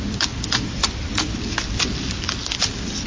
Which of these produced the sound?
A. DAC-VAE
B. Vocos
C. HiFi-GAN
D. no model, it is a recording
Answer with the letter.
D